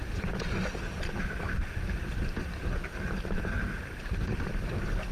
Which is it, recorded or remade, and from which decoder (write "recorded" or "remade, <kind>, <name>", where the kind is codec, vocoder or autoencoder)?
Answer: recorded